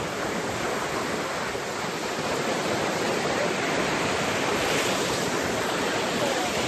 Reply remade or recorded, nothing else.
recorded